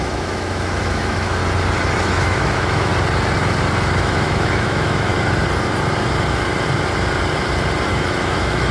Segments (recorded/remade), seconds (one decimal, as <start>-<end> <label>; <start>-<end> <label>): 0.0-1.4 remade; 1.4-2.0 recorded; 2.0-2.9 remade; 2.9-4.0 recorded; 4.0-5.1 remade; 5.1-7.9 recorded; 7.9-8.7 remade